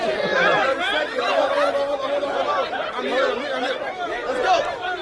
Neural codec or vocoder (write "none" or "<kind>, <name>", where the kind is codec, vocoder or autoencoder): none